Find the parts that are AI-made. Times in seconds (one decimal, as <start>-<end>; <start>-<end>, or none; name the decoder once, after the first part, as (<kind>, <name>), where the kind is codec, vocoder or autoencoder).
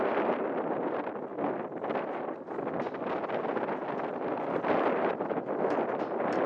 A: 0.0-1.3 (vocoder, BigVGAN v2); 4.8-6.5